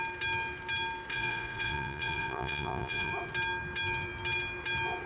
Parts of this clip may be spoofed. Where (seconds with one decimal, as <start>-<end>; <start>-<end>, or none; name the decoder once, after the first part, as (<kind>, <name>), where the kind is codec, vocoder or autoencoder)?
1.1-3.1 (vocoder, Vocos)

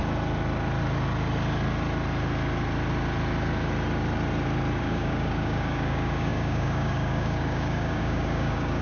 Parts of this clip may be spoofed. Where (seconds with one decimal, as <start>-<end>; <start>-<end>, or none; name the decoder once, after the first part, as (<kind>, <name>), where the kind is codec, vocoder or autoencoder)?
4.8-8.8 (codec, DAC)

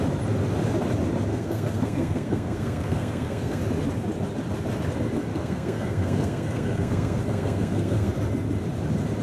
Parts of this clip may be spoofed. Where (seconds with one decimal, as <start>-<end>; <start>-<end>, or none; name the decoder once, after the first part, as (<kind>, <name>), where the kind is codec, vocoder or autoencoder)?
1.3-3.6 (codec, SNAC); 5.3-8.1

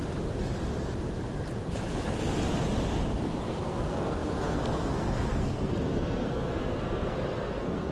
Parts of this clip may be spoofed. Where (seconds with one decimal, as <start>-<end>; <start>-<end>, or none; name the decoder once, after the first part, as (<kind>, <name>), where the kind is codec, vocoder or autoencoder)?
3.4-7.9 (codec, SNAC)

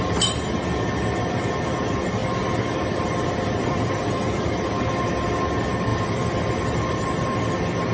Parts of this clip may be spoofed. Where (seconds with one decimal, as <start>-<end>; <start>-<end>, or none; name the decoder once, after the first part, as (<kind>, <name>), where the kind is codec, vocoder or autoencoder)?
2.2-4.5 (vocoder, BigVGAN v2); 5.9-7.5

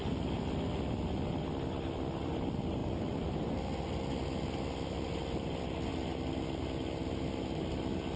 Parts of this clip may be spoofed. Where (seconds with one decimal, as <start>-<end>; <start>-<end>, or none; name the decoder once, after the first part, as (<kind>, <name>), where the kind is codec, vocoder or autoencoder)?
none